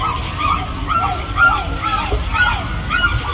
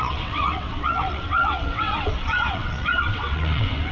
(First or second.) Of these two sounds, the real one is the first